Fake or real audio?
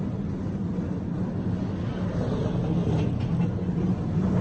real